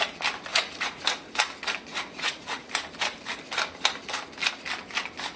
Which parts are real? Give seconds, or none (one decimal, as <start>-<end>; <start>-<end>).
0.0-0.5; 1.0-1.9; 2.7-5.4